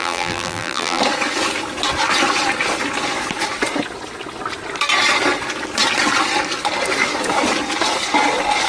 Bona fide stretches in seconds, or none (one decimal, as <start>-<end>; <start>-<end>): 1.0-8.7